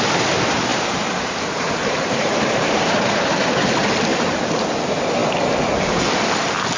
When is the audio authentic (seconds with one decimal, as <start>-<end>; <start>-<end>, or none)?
0.0-0.7; 3.4-4.1; 4.6-6.8